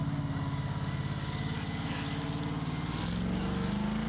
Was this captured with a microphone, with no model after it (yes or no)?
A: yes